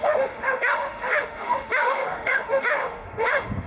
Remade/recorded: remade